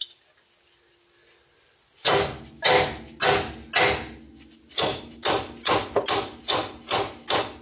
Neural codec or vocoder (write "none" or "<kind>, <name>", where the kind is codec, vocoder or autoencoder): none